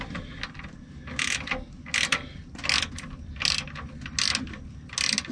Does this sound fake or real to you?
real